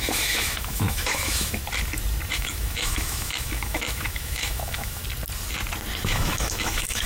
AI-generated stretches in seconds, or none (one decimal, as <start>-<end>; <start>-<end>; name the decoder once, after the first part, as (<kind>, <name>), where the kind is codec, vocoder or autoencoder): 0.0-1.6 (autoencoder, DAC-VAE); 2.3-5.0; 6.0-7.1